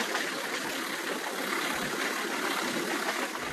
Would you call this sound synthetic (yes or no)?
no